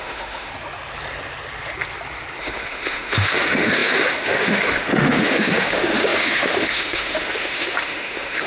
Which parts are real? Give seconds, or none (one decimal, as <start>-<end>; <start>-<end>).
0.5-2.4